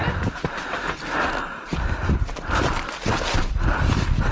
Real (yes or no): yes